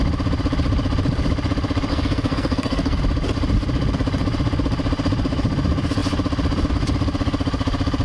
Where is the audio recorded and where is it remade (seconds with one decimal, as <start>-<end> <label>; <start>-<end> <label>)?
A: 0.0-1.9 recorded; 1.9-3.0 remade; 3.0-8.0 recorded